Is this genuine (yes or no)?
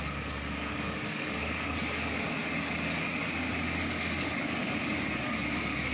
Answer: no